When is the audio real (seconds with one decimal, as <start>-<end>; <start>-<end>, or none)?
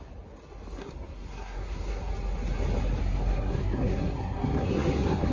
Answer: 0.0-0.8; 2.1-3.0